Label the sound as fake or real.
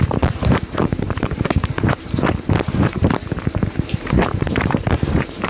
fake